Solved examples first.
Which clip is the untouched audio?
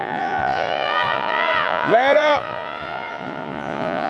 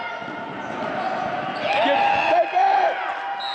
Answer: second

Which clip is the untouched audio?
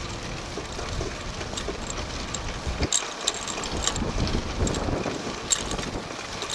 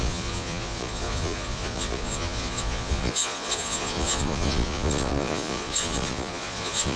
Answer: first